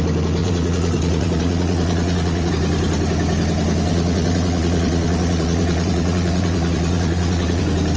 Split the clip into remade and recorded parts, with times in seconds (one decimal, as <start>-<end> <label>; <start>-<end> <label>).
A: 0.0-0.4 recorded; 0.4-2.5 remade; 2.5-3.9 recorded; 3.9-7.6 remade; 7.6-8.0 recorded